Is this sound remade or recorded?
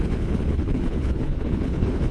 remade